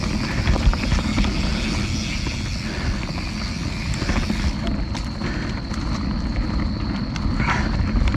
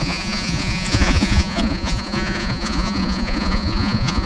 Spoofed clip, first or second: second